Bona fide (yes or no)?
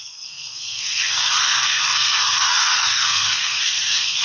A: no